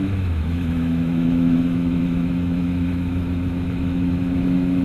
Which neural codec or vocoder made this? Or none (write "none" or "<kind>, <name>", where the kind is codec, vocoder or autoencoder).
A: autoencoder, DAC-VAE